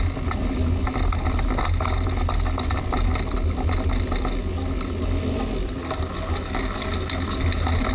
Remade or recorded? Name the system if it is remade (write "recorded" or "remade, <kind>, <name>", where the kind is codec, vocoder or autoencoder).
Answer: recorded